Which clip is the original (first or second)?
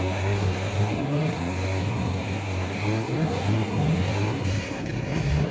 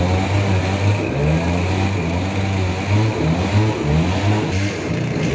second